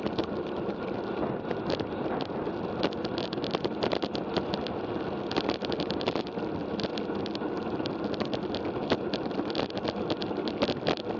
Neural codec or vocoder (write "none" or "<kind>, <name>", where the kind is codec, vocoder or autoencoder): none